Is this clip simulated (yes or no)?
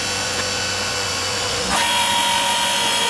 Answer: yes